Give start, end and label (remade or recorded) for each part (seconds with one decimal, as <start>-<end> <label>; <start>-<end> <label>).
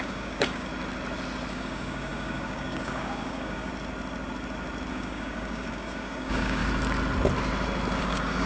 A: 0.0-0.7 remade; 0.7-1.5 recorded; 1.5-3.7 remade; 3.7-4.9 recorded; 4.9-6.6 remade; 6.6-8.0 recorded; 8.0-8.5 remade